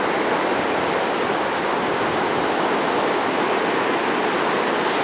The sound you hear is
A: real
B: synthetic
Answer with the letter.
A